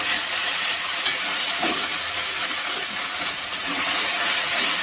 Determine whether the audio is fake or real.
fake